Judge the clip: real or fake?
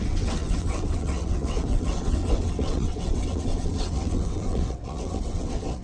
fake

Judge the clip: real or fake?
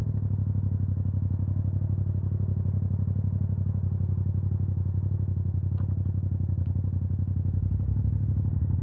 real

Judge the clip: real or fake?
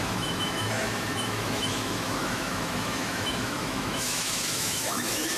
fake